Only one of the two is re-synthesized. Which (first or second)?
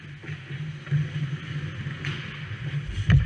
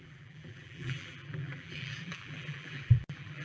second